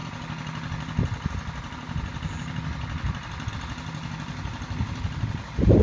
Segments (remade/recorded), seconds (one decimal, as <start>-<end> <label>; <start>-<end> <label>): 0.0-5.8 recorded